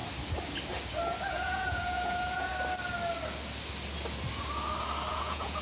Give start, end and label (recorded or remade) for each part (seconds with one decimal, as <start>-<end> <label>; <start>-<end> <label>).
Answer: 0.0-1.3 recorded; 1.3-2.5 remade; 2.5-5.1 recorded; 5.1-5.6 remade